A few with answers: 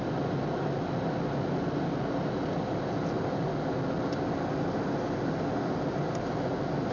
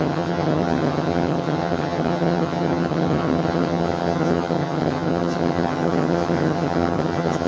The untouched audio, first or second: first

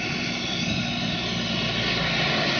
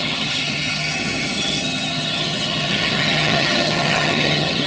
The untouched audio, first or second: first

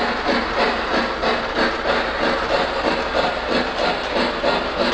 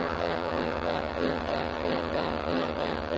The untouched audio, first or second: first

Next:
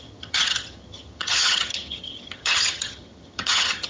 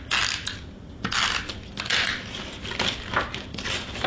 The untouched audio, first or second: second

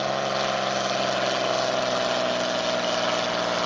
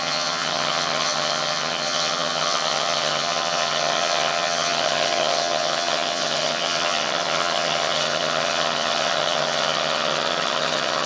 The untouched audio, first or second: first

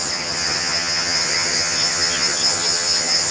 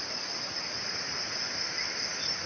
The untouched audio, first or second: second